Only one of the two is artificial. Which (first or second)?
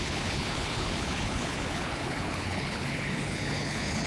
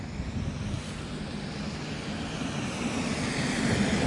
first